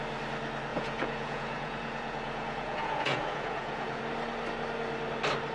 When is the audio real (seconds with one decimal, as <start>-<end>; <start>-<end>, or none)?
0.0-0.7; 4.0-5.5